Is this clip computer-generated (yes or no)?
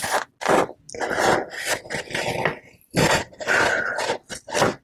no